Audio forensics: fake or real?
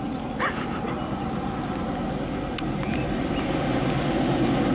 real